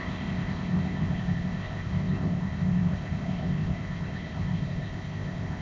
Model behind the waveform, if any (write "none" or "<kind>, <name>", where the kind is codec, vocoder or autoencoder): codec, ZipCodec